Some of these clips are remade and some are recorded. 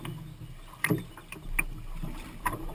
recorded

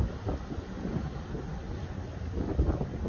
recorded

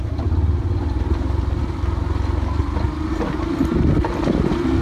recorded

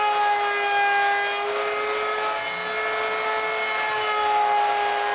recorded